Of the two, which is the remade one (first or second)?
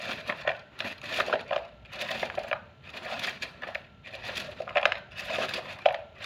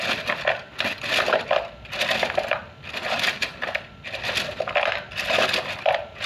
first